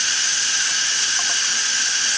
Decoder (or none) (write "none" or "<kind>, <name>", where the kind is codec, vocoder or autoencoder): none